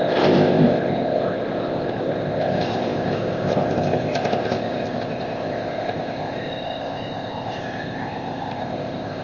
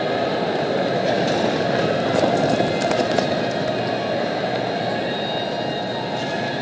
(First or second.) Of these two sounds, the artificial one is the first